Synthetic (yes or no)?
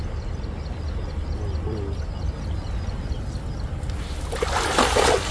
no